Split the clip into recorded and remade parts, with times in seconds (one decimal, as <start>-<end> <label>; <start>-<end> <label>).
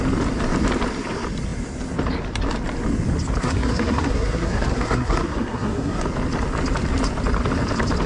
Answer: 0.0-3.4 recorded; 3.4-6.0 remade; 6.0-8.1 recorded